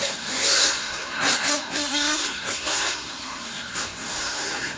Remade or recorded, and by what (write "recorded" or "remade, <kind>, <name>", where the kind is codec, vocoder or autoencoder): remade, codec, SNAC